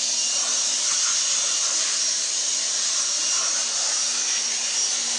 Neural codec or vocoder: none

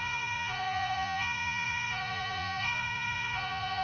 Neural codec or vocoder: vocoder, Vocos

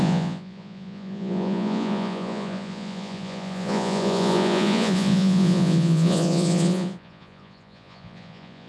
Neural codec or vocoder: vocoder, Vocos